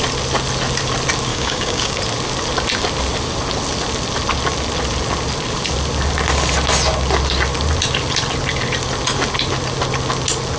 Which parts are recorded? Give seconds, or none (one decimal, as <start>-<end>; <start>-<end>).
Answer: 0.0-1.3; 2.0-10.6